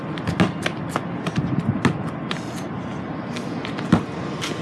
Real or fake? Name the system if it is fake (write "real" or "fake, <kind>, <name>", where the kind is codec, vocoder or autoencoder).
real